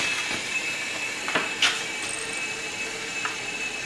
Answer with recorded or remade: recorded